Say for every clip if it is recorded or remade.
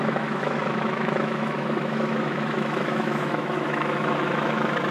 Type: remade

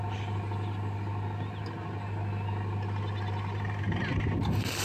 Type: recorded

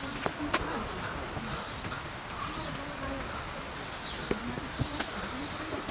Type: recorded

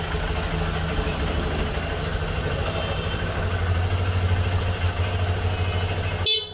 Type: recorded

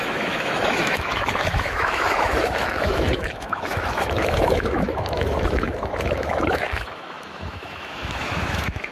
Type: remade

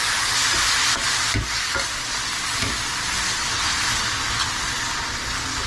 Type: recorded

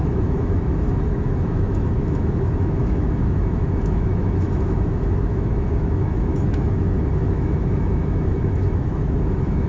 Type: remade